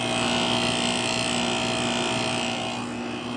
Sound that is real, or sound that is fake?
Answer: real